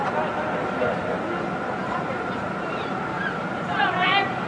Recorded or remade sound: recorded